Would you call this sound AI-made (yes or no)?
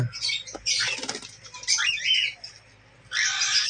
no